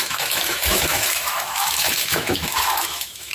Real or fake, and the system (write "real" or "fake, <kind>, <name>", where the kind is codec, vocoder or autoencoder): fake, autoencoder, DAC-VAE